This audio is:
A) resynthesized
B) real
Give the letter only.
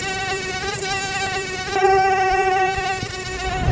A